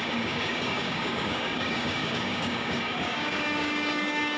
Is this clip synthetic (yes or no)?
yes